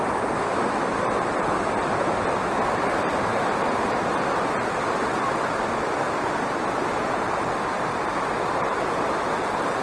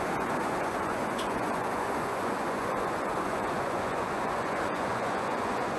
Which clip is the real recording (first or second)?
first